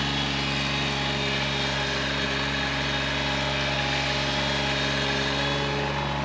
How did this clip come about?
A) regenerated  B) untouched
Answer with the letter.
B